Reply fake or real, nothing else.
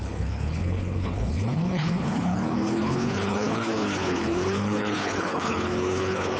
fake